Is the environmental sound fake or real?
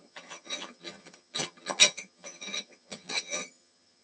fake